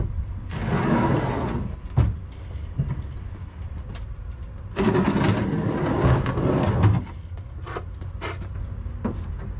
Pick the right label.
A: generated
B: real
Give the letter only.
B